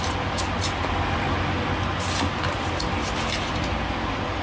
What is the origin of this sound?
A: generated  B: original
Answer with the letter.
B